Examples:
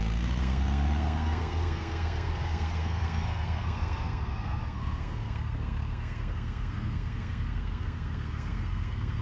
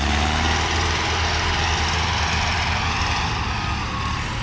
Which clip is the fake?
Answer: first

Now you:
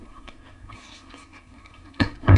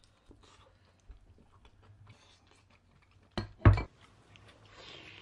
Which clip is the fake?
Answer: first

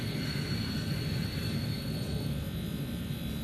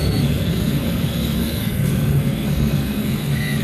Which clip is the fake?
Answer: second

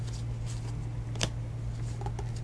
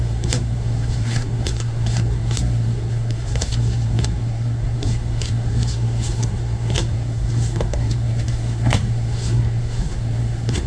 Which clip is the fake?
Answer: second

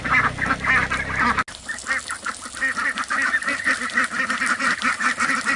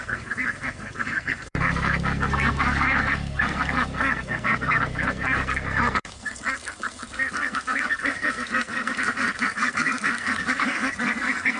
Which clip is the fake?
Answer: second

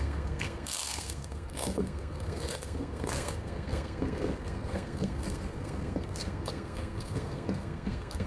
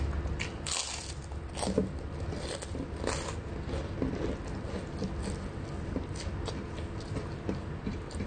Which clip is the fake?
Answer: first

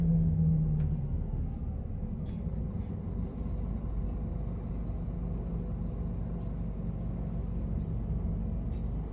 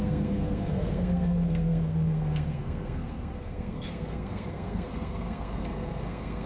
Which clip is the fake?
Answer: second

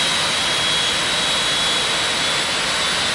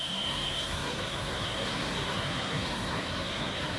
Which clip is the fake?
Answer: second